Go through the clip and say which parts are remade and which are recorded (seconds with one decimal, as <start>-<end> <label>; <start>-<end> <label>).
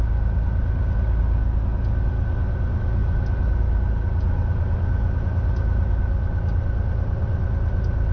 0.0-8.1 recorded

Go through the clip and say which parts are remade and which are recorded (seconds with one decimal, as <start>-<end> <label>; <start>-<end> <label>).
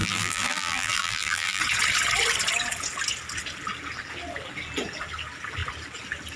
0.0-1.6 remade; 1.6-6.4 recorded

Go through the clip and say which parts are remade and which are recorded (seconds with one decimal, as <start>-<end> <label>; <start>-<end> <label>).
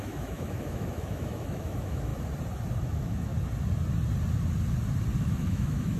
0.0-2.1 remade; 2.1-2.8 recorded; 2.8-3.3 remade; 3.3-5.2 recorded; 5.2-6.0 remade